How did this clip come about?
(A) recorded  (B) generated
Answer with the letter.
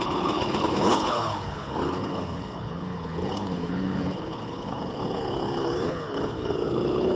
B